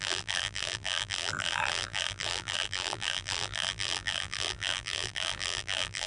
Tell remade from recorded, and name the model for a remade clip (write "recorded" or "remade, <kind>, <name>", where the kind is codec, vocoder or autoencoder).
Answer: remade, vocoder, BigVGAN v2